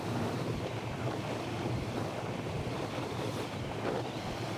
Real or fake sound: real